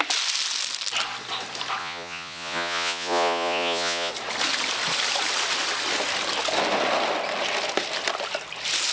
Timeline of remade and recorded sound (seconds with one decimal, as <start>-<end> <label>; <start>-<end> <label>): 0.0-1.8 recorded; 1.8-4.1 remade; 4.1-8.9 recorded